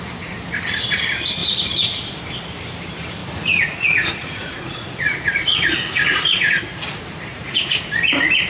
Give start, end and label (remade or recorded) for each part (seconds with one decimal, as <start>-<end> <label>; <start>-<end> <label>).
0.0-3.2 recorded; 3.2-6.6 remade; 6.6-7.3 recorded; 7.3-7.8 remade; 7.8-8.5 recorded